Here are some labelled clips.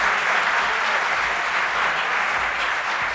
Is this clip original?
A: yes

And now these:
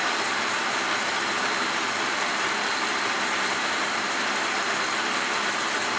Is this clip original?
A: no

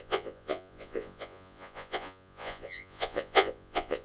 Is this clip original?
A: no